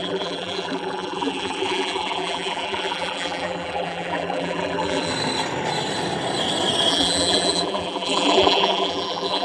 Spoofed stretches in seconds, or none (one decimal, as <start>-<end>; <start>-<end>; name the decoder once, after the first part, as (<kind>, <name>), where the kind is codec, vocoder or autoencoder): 0.0-5.1 (vocoder, BigVGAN v2); 6.9-9.4